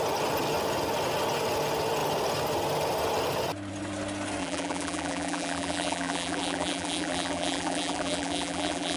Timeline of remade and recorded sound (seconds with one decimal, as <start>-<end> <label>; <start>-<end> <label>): 0.0-4.4 recorded; 4.4-9.0 remade